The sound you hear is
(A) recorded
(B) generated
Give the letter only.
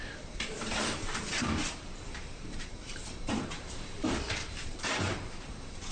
B